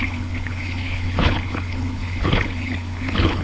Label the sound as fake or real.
fake